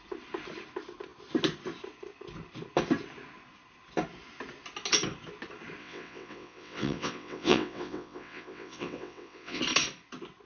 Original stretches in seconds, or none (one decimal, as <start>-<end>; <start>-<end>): 0.0-5.8; 9.6-10.5